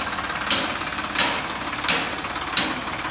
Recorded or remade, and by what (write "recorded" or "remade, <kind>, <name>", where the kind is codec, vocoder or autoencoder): recorded